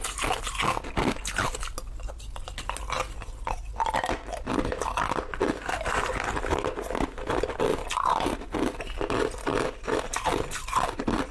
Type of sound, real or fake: real